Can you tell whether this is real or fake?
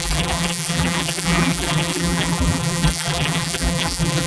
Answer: fake